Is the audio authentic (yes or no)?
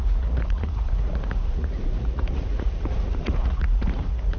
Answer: no